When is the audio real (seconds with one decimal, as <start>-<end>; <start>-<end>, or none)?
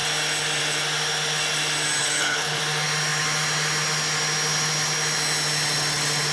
0.0-2.0; 2.6-6.3